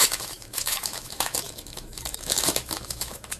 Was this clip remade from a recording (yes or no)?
yes